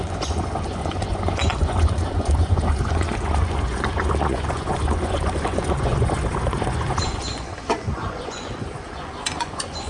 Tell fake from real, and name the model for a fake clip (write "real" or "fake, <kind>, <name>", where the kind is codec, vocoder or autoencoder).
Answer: fake, vocoder, Vocos